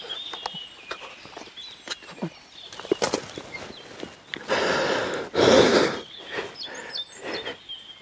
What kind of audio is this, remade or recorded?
recorded